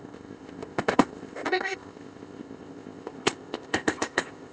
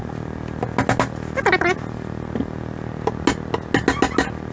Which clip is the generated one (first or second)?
first